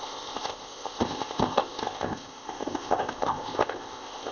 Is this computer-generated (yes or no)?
yes